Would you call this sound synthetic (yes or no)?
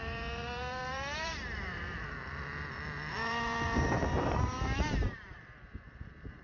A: yes